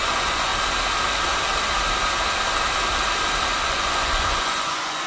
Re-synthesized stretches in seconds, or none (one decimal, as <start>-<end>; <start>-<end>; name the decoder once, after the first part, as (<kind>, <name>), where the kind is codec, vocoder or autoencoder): 0.0-0.5 (vocoder, Vocos); 3.6-5.1